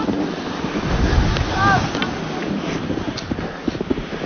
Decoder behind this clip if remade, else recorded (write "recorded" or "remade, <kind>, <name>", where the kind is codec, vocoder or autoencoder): recorded